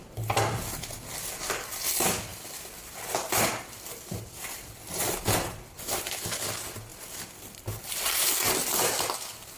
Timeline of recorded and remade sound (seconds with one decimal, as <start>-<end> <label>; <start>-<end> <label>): 0.0-2.3 recorded; 2.3-6.2 remade; 6.2-6.9 recorded; 6.9-8.0 remade; 8.0-9.6 recorded